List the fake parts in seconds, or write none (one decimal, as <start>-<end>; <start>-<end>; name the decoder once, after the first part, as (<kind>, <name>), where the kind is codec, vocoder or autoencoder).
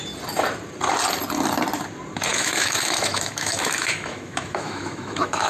2.3-5.5 (autoencoder, DAC-VAE)